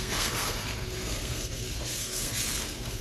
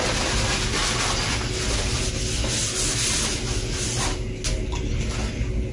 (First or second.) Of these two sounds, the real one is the second